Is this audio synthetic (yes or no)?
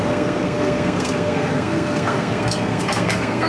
yes